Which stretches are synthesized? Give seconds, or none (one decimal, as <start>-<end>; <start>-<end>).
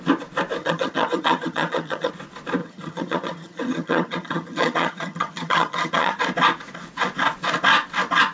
0.6-2.1; 2.6-6.2